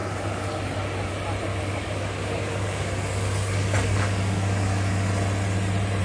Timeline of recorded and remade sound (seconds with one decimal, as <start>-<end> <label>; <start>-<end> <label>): 0.0-1.1 remade; 1.1-1.5 recorded; 1.5-5.1 remade; 5.1-6.0 recorded